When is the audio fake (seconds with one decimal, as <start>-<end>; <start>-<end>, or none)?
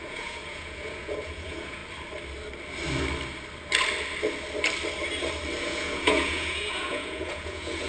0.0-1.8; 5.6-7.9